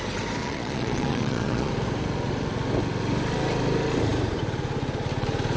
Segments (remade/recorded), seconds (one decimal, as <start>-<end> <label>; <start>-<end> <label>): 0.0-0.4 recorded; 0.4-1.7 remade; 1.7-5.6 recorded